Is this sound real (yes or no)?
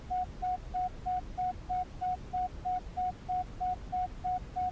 yes